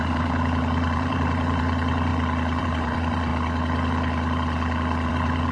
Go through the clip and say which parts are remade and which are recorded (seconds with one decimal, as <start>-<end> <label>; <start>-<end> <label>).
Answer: 0.0-2.1 remade; 2.1-2.6 recorded; 2.6-3.3 remade; 3.3-5.1 recorded; 5.1-5.5 remade